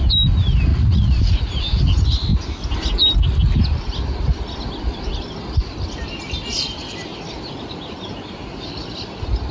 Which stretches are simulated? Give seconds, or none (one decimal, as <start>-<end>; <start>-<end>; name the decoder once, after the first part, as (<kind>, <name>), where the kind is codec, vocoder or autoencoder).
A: 0.7-1.8 (vocoder, Vocos)